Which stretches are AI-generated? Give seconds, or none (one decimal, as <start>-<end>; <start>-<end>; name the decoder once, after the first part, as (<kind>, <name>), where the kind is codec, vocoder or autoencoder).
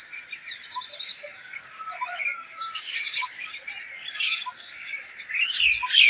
1.1-1.7 (codec, DAC); 2.2-3.5; 3.9-5.2